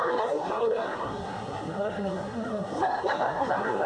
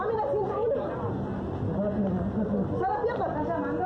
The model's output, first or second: first